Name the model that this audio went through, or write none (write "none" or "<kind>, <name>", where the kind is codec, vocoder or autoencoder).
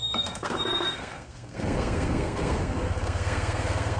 codec, SNAC